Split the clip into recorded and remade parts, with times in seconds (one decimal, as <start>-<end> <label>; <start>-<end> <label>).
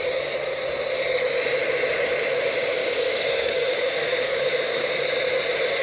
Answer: 0.0-2.8 recorded; 2.8-5.0 remade; 5.0-5.8 recorded